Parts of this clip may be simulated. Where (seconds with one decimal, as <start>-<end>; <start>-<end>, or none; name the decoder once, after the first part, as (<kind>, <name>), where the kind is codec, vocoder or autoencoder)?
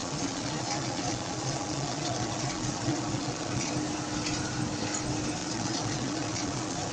0.0-3.7 (vocoder, Vocos); 5.4-6.9